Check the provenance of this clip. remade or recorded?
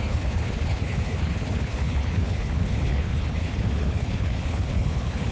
remade